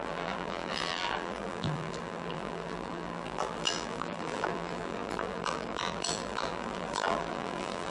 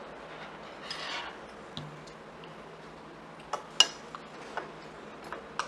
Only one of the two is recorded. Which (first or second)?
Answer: second